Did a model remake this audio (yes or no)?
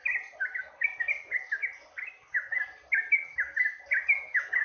no